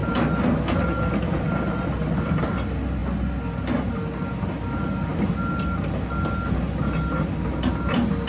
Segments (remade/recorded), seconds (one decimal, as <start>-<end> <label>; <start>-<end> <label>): 0.0-8.3 recorded